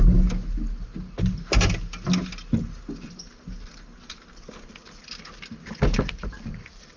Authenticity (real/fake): real